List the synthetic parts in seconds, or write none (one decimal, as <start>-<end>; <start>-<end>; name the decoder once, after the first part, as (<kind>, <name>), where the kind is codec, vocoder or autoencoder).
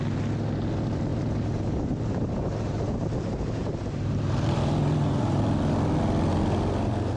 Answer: 1.1-5.4 (vocoder, BigVGAN v2)